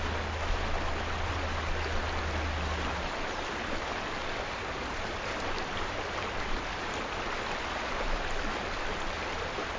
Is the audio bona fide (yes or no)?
yes